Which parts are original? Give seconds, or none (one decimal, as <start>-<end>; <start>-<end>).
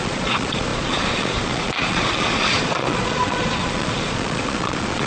none